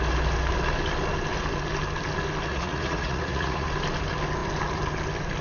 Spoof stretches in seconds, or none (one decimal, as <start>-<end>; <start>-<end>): 2.5-3.7